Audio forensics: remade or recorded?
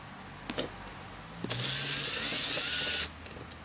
recorded